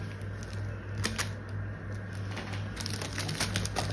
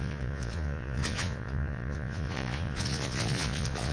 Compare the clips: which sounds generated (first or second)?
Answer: second